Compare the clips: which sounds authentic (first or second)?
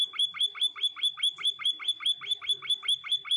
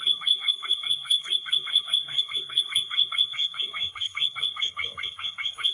first